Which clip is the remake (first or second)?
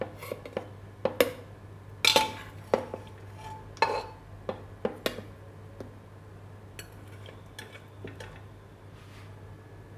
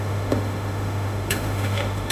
second